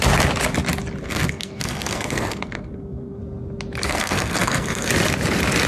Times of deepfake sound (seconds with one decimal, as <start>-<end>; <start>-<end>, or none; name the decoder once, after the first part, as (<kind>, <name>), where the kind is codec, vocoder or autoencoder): 1.0-3.2 (codec, SNAC); 3.9-4.9